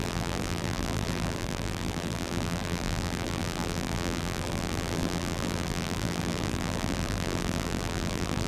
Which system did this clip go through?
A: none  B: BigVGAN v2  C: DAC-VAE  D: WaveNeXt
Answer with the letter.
B